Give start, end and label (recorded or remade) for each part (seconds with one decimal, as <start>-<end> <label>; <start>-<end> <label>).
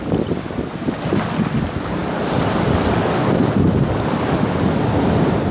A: 0.0-5.5 recorded